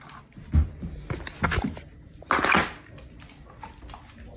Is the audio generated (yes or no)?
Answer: no